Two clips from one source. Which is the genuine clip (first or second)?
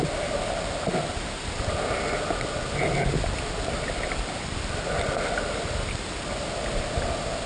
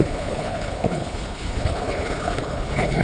first